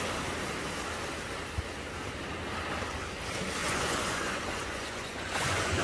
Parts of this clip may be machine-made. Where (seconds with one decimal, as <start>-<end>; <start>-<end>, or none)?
3.6-5.8